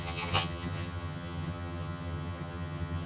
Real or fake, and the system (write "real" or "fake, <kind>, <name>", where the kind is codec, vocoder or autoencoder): fake, vocoder, HiFi-GAN